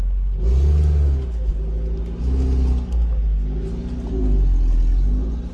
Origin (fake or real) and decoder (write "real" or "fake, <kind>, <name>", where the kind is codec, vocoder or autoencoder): real